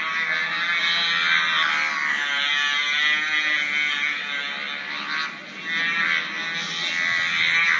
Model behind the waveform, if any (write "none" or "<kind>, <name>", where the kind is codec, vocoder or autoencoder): none